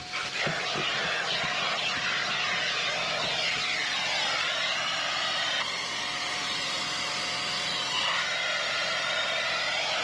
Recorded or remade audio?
recorded